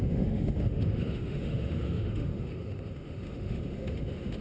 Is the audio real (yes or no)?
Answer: no